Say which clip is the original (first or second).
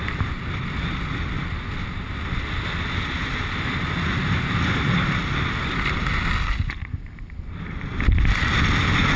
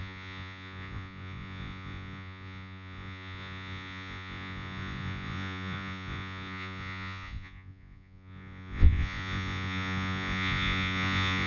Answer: first